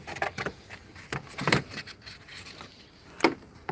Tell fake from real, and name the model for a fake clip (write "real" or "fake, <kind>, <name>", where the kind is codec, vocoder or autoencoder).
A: real